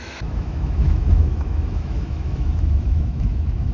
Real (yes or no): no